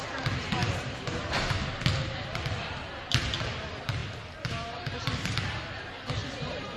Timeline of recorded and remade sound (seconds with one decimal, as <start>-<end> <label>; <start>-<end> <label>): 0.0-0.6 recorded; 0.6-1.6 remade; 1.6-4.0 recorded; 4.0-5.0 remade; 5.0-6.2 recorded; 6.2-6.8 remade